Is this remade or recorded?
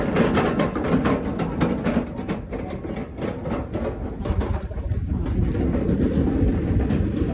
recorded